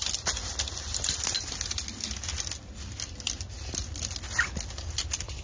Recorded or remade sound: recorded